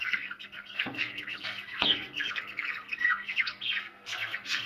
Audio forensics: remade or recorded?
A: remade